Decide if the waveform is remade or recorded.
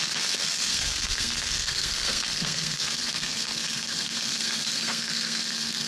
remade